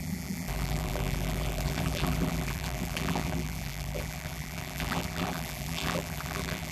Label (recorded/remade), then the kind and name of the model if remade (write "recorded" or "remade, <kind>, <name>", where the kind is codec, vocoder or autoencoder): remade, vocoder, BigVGAN v2